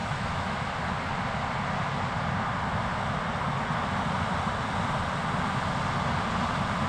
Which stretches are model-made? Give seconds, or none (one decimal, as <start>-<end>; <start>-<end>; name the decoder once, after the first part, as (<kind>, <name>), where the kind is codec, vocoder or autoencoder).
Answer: 0.0-0.7 (autoencoder, DAC-VAE)